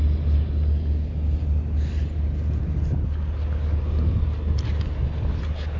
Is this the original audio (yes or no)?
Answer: yes